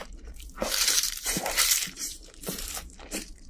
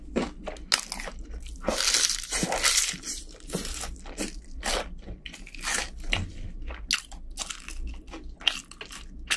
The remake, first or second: first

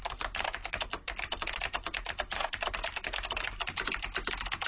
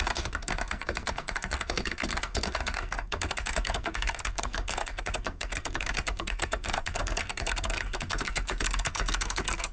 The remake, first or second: second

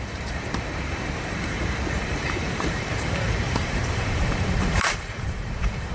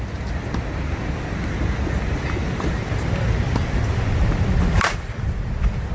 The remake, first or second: first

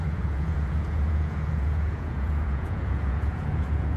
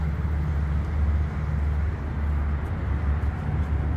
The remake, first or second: first